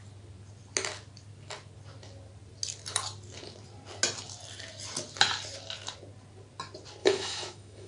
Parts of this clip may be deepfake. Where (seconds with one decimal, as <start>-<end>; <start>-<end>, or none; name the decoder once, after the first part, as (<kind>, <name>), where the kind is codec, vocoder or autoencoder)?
7.0-7.9 (autoencoder, DAC-VAE)